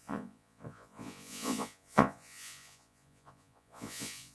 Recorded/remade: remade